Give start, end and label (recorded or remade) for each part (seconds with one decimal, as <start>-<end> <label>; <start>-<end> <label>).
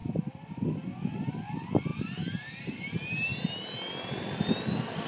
0.0-1.9 recorded; 1.9-2.9 remade; 2.9-5.1 recorded